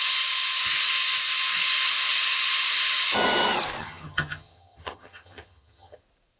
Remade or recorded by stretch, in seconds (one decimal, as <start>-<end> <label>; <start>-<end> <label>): 0.0-3.8 recorded; 3.8-6.0 remade; 6.0-6.4 recorded